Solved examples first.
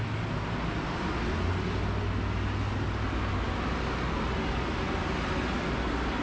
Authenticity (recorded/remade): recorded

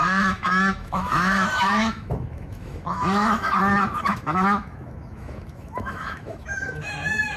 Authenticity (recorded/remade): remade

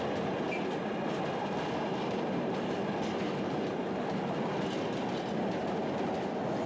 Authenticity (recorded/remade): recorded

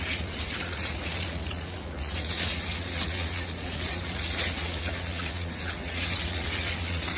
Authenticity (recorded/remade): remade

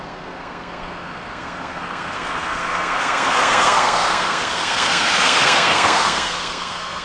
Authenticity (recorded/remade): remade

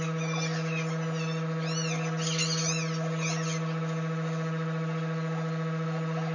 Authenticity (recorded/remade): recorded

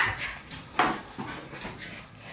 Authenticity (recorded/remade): recorded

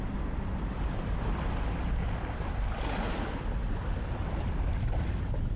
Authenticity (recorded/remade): recorded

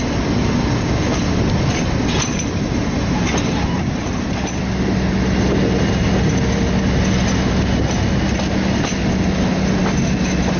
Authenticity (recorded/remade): recorded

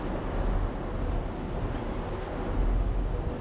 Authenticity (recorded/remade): recorded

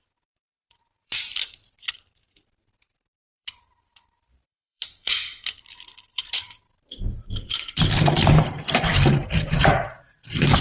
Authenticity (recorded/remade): remade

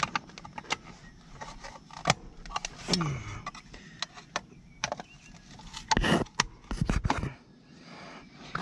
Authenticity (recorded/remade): recorded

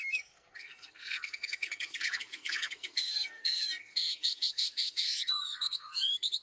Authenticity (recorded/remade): remade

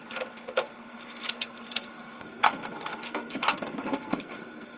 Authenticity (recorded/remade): remade